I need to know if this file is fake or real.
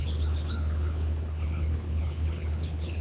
fake